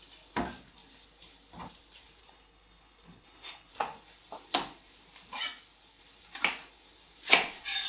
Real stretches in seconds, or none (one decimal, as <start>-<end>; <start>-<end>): 0.0-2.2; 3.7-7.9